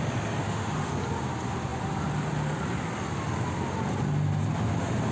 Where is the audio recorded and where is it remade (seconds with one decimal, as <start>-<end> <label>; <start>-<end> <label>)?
0.0-0.4 recorded; 0.4-0.9 remade; 0.9-5.1 recorded